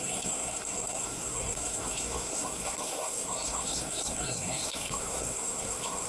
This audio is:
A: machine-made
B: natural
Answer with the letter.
A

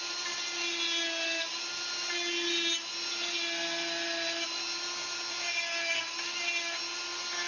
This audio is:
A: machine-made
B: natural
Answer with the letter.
B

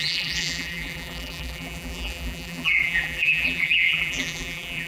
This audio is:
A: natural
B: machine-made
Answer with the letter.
B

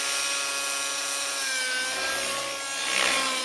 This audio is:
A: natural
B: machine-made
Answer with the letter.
A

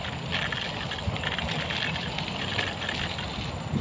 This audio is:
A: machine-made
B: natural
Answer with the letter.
B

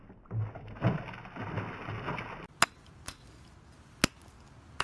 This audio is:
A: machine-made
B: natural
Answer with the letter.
B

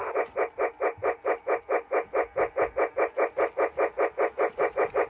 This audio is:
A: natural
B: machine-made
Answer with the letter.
A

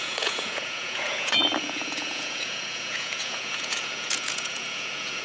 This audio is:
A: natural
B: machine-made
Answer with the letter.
B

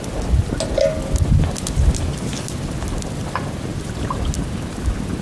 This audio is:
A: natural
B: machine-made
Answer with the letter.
A